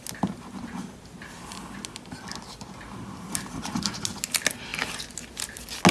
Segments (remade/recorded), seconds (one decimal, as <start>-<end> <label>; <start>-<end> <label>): 0.0-5.9 recorded